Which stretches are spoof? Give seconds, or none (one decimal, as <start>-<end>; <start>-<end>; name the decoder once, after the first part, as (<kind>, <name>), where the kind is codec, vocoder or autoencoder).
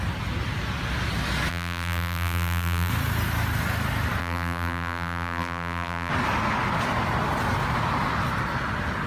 1.5-2.9 (vocoder, BigVGAN v2); 4.2-6.1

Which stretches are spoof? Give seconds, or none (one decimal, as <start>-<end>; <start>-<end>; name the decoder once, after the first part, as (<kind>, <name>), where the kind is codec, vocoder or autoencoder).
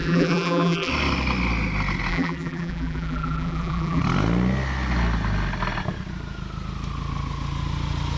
0.0-0.9 (vocoder, BigVGAN v2); 2.1-4.0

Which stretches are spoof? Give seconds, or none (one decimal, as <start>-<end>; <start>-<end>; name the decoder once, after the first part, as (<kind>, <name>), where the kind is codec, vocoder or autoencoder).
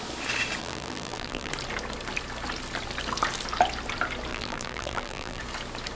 0.6-1.5 (vocoder, BigVGAN v2); 4.3-5.4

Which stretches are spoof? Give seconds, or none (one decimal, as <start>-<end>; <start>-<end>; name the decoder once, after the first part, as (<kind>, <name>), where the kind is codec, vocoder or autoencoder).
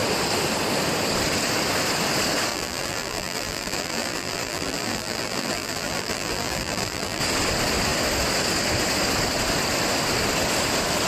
2.5-7.2 (vocoder, BigVGAN v2)